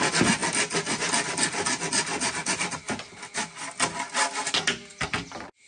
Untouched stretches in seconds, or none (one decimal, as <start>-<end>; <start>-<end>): 0.0-5.7

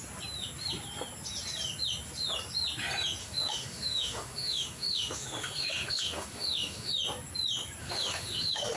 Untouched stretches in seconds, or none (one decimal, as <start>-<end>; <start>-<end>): 0.0-3.2; 6.9-7.8

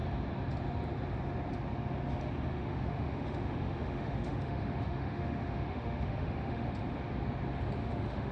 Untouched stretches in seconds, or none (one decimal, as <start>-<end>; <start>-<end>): 0.0-2.5; 6.7-7.8

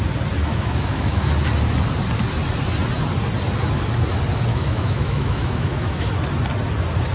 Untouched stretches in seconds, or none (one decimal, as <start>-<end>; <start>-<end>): 0.0-0.5; 1.3-4.5; 6.1-7.1

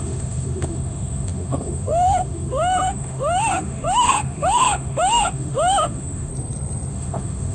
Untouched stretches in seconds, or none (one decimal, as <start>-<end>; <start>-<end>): 6.3-6.9

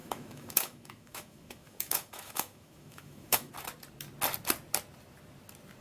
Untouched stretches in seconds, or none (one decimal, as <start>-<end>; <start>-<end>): 3.5-5.8